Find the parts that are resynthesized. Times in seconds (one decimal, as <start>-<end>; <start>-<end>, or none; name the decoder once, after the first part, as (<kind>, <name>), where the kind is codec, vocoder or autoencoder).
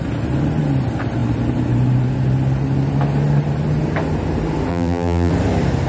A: 4.7-5.3 (vocoder, BigVGAN v2)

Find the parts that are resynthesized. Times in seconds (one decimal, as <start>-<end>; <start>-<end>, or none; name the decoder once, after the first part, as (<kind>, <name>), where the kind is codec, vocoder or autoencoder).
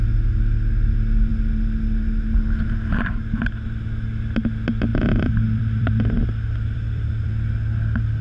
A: 4.9-7.3 (vocoder, BigVGAN v2)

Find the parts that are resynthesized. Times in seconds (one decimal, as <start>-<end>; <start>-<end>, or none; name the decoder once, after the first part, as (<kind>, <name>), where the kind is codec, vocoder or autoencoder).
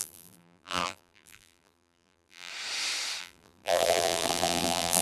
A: 0.0-2.5 (vocoder, BigVGAN v2); 3.2-5.0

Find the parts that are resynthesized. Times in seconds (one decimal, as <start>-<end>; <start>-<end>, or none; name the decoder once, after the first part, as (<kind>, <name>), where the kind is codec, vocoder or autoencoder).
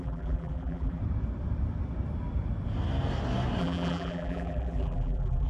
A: 0.0-1.0 (vocoder, BigVGAN v2); 3.6-5.5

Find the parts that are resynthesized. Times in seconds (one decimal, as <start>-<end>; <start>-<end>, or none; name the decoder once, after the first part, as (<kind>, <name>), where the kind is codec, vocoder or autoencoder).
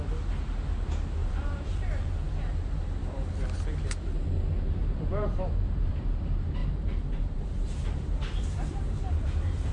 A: 1.2-2.1 (vocoder, BigVGAN v2); 4.8-5.9; 6.6-9.7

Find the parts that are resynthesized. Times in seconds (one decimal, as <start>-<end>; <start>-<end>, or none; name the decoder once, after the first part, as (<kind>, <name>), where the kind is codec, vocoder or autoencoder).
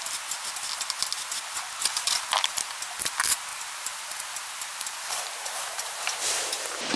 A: 3.5-6.0 (vocoder, BigVGAN v2)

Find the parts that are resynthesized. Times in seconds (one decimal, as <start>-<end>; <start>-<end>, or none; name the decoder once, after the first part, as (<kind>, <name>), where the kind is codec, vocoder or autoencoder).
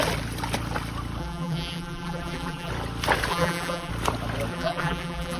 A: 1.2-2.7 (vocoder, BigVGAN v2); 3.3-3.9; 4.5-5.4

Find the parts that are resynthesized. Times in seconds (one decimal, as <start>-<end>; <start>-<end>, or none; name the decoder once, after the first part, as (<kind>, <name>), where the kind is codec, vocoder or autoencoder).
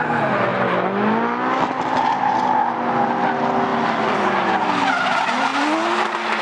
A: none